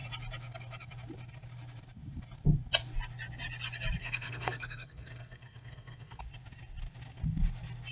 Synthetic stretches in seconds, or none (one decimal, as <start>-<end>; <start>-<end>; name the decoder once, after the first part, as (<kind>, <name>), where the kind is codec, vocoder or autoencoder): 4.0-6.2 (codec, SNAC)